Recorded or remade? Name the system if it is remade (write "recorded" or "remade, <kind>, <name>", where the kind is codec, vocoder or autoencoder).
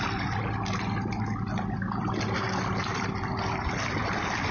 recorded